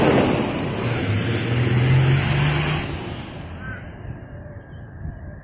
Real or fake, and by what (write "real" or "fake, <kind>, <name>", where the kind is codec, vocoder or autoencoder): real